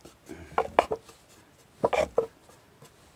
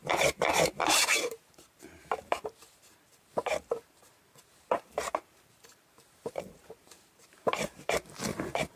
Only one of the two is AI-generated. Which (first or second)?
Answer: second